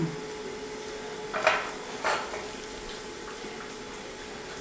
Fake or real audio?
real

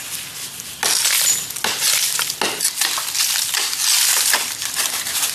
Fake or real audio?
real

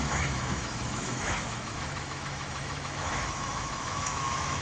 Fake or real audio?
fake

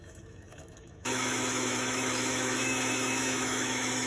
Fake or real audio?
fake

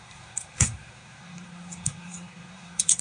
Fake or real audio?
fake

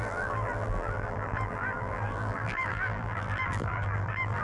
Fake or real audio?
fake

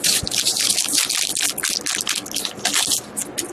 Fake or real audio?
real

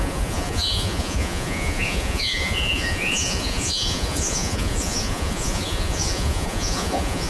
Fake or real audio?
fake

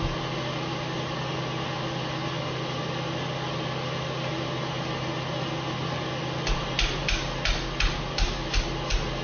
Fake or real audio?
real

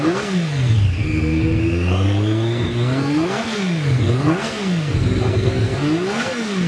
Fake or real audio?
fake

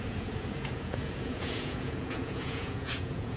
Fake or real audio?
fake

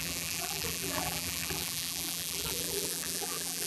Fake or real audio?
fake